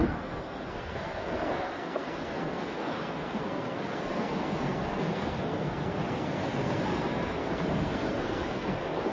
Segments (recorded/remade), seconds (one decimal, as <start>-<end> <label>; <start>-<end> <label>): 0.0-9.1 remade